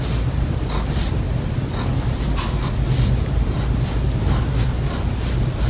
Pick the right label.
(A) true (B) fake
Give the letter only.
A